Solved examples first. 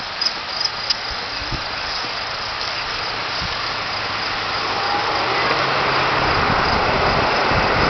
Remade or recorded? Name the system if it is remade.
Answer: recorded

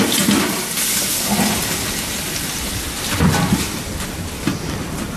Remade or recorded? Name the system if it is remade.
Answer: recorded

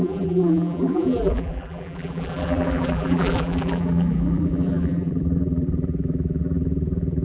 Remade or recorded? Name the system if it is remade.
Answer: remade, vocoder, BigVGAN v2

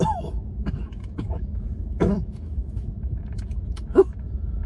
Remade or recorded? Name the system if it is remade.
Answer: remade, autoencoder, DAC-VAE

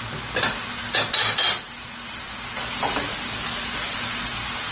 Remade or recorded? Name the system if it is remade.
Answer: recorded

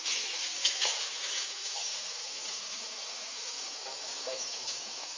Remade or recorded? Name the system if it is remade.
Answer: remade, autoencoder, DAC-VAE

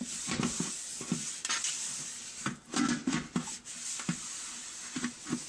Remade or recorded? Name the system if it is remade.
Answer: recorded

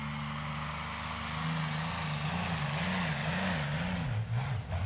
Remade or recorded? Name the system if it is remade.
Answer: recorded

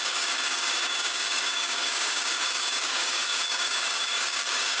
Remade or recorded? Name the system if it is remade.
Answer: remade, codec, DAC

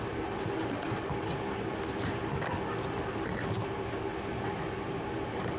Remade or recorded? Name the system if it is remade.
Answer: recorded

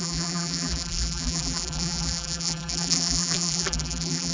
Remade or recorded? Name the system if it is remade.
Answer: remade, vocoder, BigVGAN v2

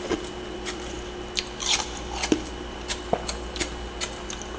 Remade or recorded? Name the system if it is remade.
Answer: recorded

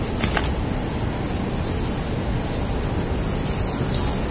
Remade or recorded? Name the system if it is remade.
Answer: recorded